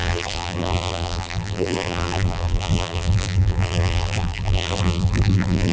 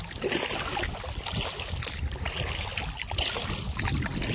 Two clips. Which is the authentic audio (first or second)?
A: second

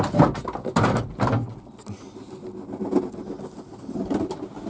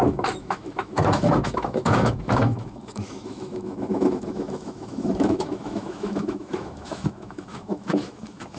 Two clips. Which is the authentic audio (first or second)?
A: first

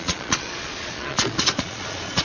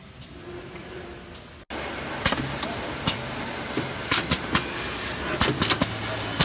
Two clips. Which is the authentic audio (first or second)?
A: second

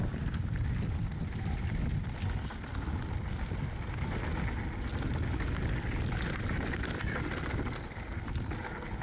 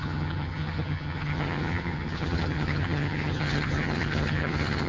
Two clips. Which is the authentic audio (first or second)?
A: first